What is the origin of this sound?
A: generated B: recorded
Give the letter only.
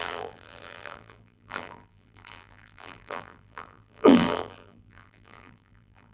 A